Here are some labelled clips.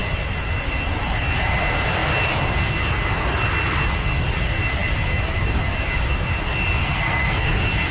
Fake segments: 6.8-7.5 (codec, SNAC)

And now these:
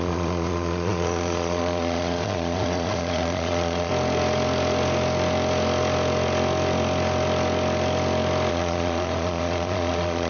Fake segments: 0.0-3.9 (vocoder, Vocos); 8.5-10.3

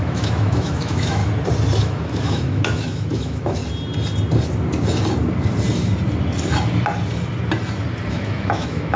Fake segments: 0.0-1.2 (autoencoder, DAC-VAE); 1.8-3.6; 8.1-9.0

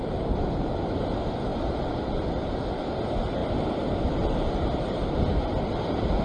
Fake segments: none

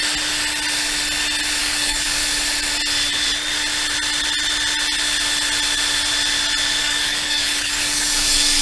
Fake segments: 1.6-2.2 (codec, DAC); 6.8-8.6

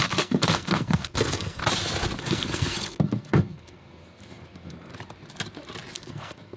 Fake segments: 0.0-1.6 (codec, SNAC); 2.2-4.9; 5.9-6.6

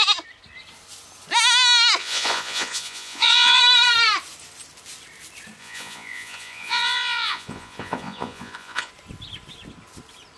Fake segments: 2.0-3.6 (vocoder, Vocos); 5.6-8.9

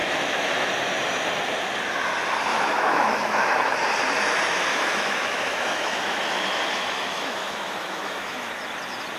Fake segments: 0.0-0.7 (autoencoder, DAC-VAE); 2.5-3.4; 4.7-8.5